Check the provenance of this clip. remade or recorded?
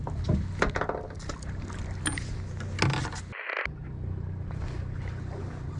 recorded